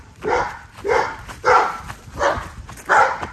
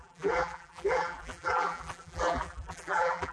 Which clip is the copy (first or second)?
second